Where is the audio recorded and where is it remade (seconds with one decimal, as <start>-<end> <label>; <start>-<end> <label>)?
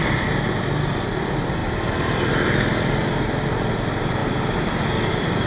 0.0-5.5 recorded